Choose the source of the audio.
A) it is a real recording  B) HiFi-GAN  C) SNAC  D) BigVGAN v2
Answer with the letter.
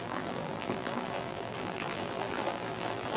D